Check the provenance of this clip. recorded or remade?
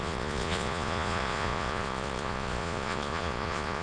remade